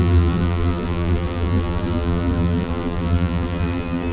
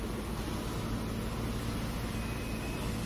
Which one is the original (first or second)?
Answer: second